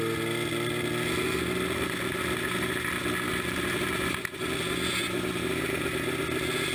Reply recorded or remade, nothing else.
recorded